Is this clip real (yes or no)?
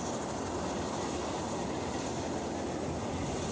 yes